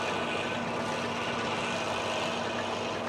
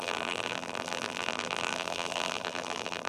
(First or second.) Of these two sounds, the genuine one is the first